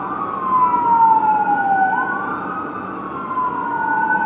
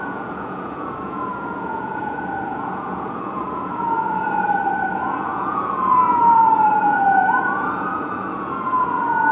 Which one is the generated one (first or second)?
second